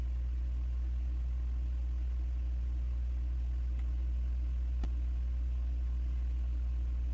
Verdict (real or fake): real